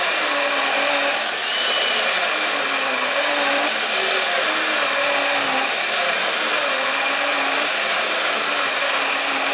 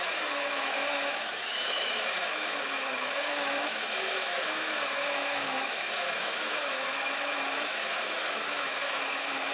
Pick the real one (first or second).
first